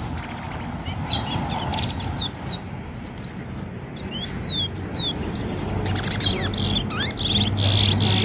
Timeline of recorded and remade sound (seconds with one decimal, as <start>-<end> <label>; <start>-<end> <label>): 0.0-1.7 recorded; 1.7-3.5 remade; 3.5-8.2 recorded